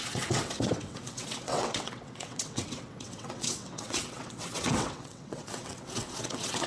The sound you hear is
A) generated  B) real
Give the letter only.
A